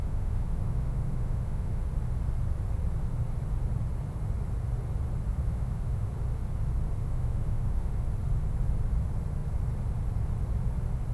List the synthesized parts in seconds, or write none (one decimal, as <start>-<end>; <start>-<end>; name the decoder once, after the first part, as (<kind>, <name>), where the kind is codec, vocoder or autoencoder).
0.0-1.8 (autoencoder, DAC-VAE); 5.4-6.1; 7.0-7.9

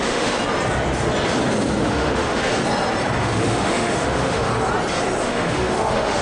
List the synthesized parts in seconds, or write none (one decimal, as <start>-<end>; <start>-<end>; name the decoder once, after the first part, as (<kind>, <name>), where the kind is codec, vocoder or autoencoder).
0.0-0.4 (autoencoder, DAC-VAE); 1.8-2.5; 3.2-4.5; 5.2-6.2

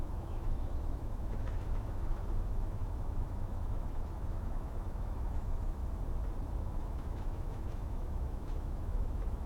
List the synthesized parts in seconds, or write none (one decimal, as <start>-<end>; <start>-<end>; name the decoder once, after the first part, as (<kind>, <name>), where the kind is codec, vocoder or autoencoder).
0.0-5.8 (autoencoder, DAC-VAE); 6.6-9.5

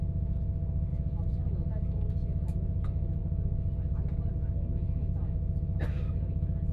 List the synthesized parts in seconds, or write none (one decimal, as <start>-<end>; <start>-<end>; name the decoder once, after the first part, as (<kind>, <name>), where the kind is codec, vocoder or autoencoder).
0.0-3.2 (autoencoder, DAC-VAE); 4.3-6.7

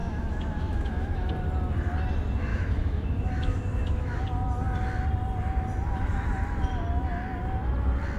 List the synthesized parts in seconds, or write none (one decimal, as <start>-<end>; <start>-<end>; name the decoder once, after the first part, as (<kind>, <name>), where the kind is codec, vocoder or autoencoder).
0.0-1.3 (autoencoder, DAC-VAE); 2.5-4.2

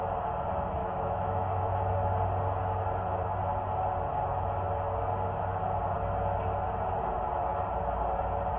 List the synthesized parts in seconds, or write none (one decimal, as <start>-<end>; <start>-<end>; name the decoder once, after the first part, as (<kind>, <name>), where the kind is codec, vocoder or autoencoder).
0.8-1.7 (autoencoder, DAC-VAE)

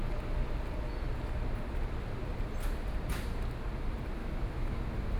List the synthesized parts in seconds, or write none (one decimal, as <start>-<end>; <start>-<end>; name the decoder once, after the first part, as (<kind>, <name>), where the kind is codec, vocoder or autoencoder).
4.2-4.8 (autoencoder, DAC-VAE)

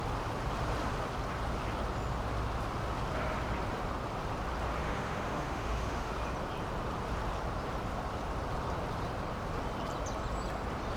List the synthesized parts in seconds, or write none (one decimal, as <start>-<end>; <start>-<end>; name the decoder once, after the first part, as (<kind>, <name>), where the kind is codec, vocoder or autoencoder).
4.8-6.1 (autoencoder, DAC-VAE)